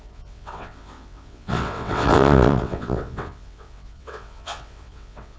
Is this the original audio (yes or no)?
no